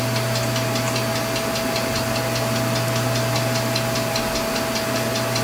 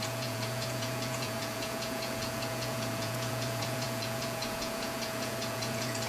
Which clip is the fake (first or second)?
second